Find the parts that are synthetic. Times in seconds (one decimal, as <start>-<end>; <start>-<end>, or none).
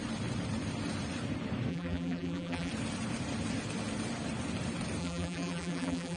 1.7-2.7; 5.0-6.2